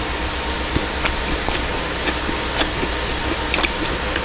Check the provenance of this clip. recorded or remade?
recorded